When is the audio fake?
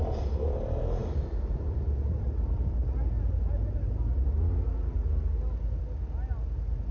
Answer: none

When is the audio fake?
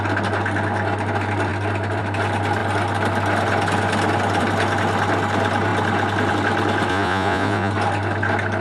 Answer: 6.9-7.7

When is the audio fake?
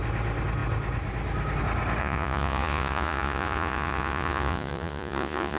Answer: 2.0-5.6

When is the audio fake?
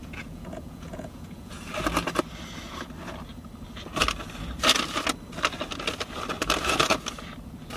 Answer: 0.0-1.6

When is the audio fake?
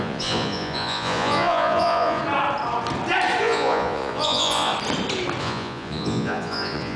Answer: 0.0-2.2; 3.4-4.7; 5.4-7.0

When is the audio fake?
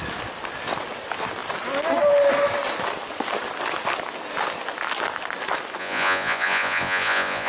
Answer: 5.8-7.5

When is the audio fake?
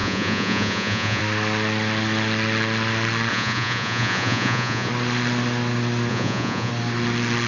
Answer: 0.0-1.2; 3.3-4.9; 6.1-6.7